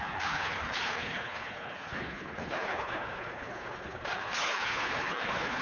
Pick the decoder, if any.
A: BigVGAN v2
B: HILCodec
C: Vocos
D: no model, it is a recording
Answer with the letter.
B